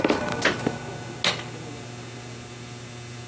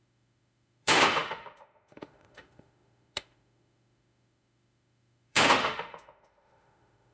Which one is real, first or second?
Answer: first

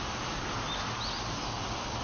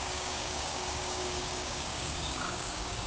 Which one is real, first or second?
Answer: first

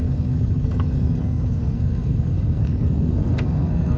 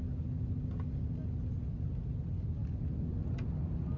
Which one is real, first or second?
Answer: second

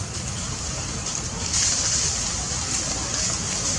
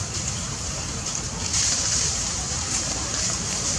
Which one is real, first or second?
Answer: first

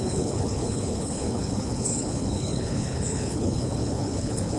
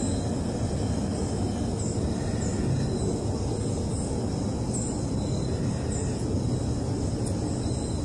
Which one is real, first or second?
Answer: second